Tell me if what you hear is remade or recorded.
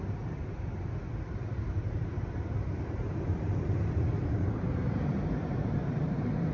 remade